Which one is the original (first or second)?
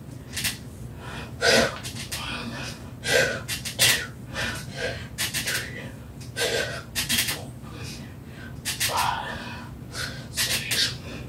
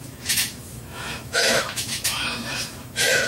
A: first